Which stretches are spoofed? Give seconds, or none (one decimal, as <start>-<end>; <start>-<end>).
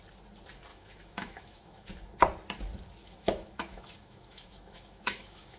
0.7-1.9; 3.0-5.6